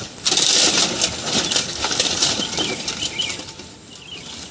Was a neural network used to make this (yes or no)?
no